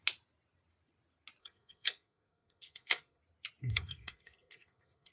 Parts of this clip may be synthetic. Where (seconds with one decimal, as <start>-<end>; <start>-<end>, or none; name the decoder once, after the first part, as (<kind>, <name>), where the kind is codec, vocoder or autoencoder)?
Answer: 1.4-3.2 (codec, SNAC); 3.6-5.1